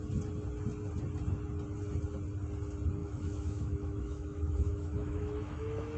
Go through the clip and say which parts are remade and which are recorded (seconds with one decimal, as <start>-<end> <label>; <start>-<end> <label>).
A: 0.0-3.0 recorded; 3.0-6.0 remade